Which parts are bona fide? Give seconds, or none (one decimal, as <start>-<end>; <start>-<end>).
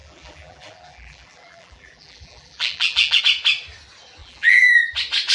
3.2-4.2; 4.8-5.3